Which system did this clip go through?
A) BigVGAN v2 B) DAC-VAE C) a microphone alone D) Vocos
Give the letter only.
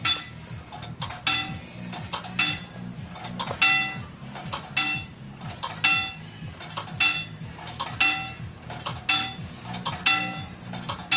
C